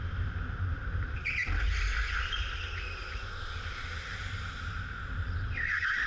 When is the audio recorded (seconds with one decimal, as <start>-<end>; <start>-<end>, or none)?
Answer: 1.4-5.1